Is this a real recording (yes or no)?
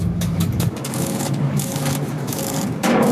no